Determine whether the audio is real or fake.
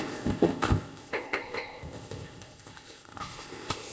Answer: fake